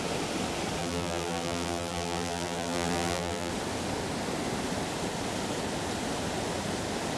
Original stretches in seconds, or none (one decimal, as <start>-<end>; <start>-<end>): 0.0-0.8; 3.5-7.2